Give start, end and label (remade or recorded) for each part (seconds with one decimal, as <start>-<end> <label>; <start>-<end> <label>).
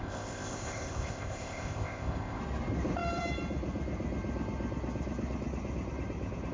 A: 0.0-2.4 remade; 2.4-6.5 recorded